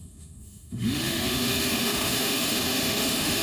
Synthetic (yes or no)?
yes